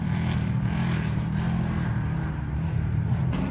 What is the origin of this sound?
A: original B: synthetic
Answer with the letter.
B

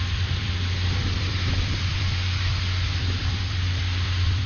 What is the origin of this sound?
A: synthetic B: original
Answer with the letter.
A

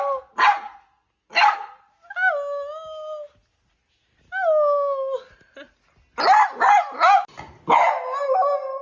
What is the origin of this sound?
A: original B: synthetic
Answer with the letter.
A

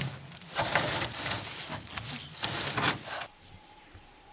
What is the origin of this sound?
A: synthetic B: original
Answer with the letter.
A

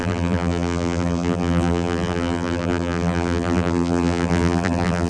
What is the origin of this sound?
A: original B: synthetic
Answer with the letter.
B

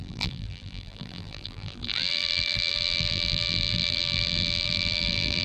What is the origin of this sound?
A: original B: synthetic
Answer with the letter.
B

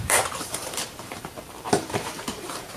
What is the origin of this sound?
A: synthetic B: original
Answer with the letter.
A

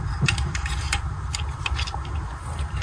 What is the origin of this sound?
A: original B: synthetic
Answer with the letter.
B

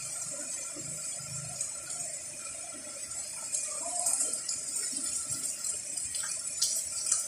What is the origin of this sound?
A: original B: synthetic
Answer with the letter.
B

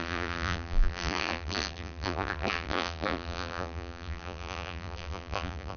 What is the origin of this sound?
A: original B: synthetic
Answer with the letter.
B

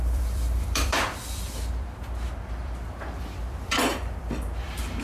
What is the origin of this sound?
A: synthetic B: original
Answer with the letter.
A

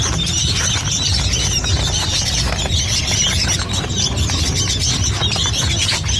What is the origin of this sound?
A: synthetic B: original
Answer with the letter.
B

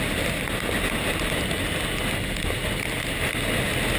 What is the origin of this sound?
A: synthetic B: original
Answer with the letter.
B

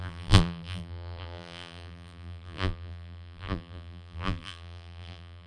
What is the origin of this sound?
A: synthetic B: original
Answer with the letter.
A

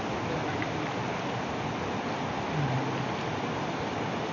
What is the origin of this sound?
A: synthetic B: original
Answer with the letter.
B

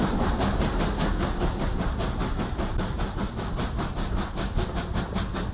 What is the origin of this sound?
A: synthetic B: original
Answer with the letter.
B